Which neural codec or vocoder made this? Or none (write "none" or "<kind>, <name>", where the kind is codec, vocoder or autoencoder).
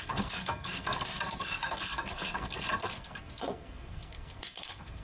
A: codec, SNAC